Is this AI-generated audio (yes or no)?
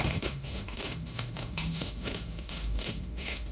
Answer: yes